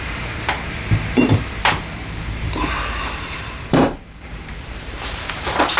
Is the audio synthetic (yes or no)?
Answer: yes